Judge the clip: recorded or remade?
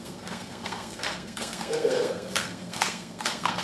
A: remade